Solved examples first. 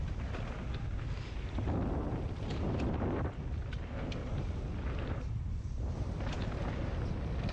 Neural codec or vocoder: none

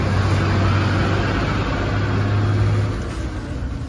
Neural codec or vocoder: none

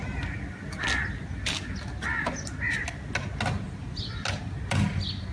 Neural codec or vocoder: none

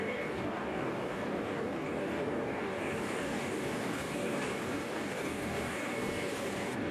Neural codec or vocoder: codec, DAC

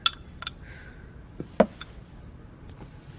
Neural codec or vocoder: none